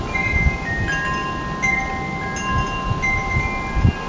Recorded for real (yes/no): yes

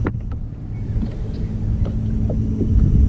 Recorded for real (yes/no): yes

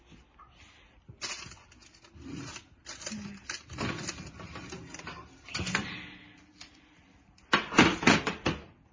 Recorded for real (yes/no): yes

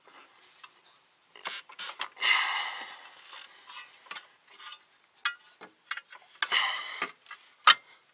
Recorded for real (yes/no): yes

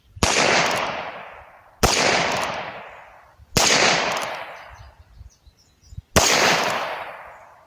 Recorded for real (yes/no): yes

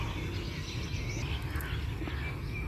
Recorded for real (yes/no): yes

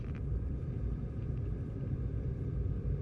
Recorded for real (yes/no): no